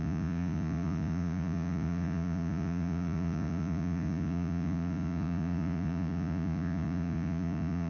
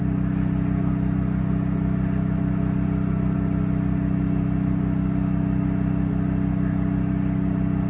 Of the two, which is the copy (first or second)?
first